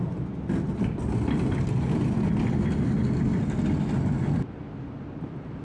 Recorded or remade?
recorded